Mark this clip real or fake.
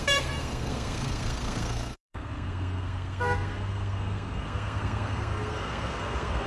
fake